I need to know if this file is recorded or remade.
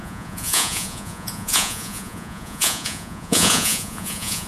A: remade